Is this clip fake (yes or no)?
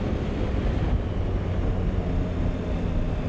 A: no